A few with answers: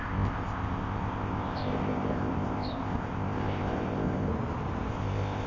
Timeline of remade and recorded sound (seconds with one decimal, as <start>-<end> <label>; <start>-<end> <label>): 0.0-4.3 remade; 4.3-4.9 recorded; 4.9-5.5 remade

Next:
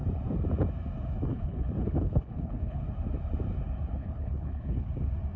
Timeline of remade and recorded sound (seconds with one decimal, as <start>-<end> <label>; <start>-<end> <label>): 0.0-1.3 recorded; 1.3-2.8 remade; 2.8-4.0 recorded; 4.0-4.9 remade; 4.9-5.4 recorded

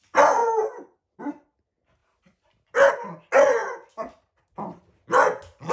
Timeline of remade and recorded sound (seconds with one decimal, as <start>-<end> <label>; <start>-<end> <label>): 0.0-5.7 recorded